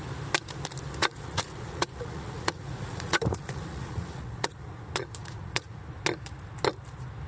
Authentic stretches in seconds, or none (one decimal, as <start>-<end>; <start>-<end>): 0.0-1.0; 4.7-5.2; 5.8-7.3